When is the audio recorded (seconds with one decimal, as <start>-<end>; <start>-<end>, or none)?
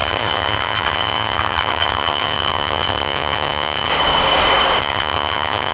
3.9-4.8